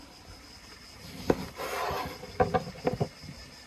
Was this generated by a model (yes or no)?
no